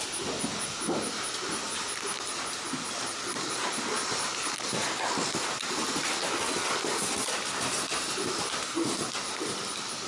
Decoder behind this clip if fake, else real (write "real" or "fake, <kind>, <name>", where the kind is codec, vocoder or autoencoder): real